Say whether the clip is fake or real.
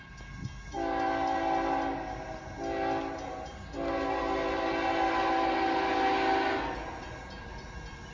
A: real